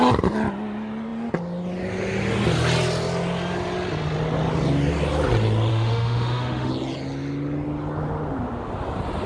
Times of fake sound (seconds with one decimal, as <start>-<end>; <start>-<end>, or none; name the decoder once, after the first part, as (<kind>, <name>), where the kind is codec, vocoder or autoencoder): 5.7-6.7 (autoencoder, DAC-VAE)